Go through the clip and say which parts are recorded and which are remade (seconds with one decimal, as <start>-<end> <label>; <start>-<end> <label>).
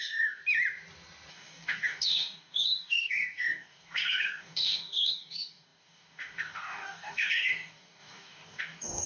0.0-0.4 remade; 0.4-1.3 recorded; 1.3-9.1 remade